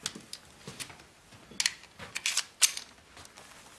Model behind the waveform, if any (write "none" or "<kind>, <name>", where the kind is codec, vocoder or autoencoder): none